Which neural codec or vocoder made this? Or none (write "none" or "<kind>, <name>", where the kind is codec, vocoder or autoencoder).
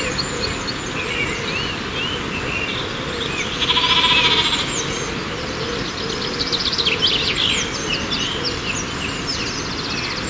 none